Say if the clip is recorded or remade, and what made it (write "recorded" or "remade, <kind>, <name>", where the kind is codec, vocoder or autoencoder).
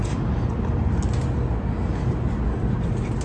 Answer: recorded